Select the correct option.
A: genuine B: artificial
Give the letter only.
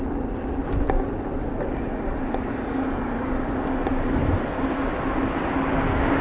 A